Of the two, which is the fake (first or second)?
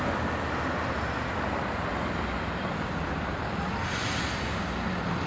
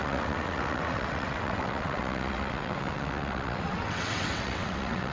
second